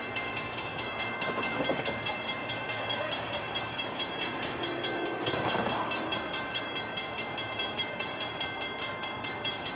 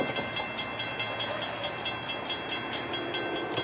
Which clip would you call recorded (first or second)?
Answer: second